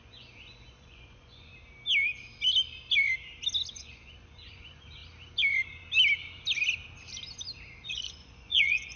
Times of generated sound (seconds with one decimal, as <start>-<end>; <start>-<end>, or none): 0.0-1.5; 3.7-5.0; 7.9-9.0